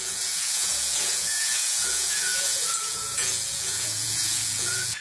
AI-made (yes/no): yes